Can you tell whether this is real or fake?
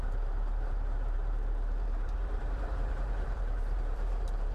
fake